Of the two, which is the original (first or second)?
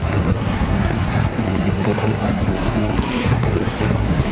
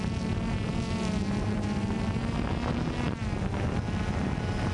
second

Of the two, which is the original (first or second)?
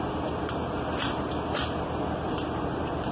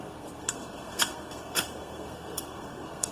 first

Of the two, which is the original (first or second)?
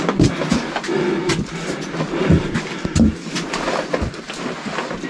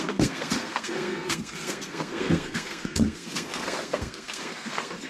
first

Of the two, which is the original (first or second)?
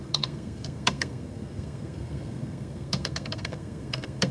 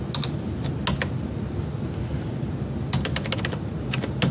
second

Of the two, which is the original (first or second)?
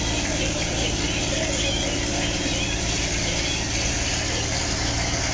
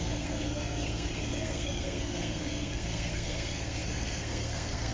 first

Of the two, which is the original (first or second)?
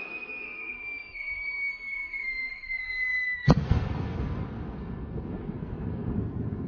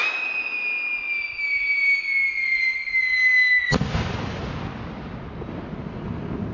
second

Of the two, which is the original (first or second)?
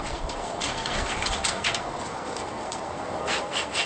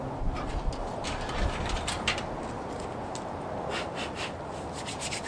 second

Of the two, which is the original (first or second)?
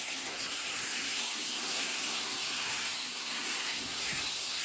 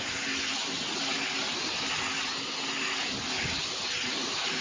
second